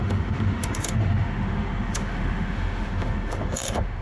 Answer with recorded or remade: remade